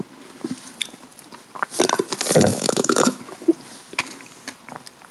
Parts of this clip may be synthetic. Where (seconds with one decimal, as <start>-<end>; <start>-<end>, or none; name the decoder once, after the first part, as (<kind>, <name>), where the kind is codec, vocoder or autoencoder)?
2.5-3.2 (autoencoder, DAC-VAE)